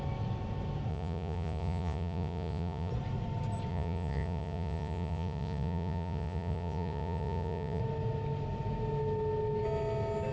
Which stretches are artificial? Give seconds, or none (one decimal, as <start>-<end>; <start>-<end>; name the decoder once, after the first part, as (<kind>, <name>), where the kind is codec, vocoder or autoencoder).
0.9-2.9 (vocoder, Vocos); 3.7-7.8